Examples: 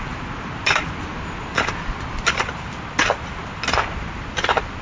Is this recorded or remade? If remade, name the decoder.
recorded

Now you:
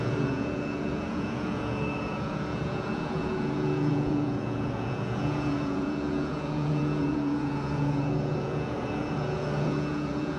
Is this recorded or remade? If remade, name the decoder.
remade, vocoder, Vocos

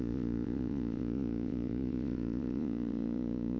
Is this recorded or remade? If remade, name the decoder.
remade, vocoder, Vocos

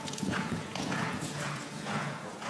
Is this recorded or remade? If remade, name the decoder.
remade, vocoder, Vocos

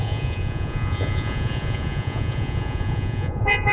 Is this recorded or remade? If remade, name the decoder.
remade, vocoder, Vocos